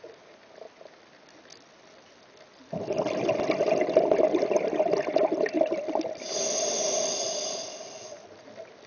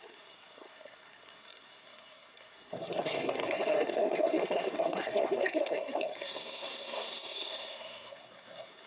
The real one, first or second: first